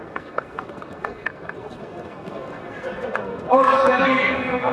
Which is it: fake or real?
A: fake